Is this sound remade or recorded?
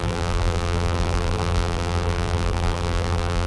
remade